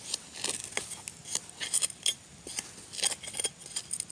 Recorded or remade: recorded